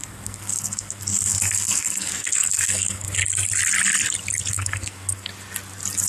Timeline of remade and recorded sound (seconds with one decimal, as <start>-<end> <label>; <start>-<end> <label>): 0.0-3.2 remade; 3.2-4.5 recorded; 4.5-5.3 remade; 5.3-6.1 recorded